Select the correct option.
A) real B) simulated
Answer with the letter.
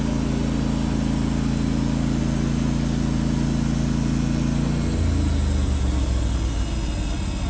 A